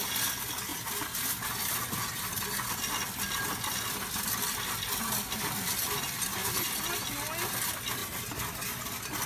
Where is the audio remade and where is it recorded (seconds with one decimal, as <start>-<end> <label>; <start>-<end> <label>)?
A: 0.0-9.3 recorded